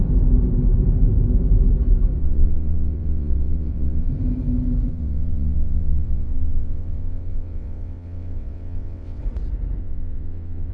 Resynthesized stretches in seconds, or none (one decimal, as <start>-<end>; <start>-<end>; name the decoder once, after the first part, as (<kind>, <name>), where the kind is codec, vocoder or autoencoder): 2.2-4.1 (vocoder, WaveNeXt); 4.9-9.2; 9.8-10.7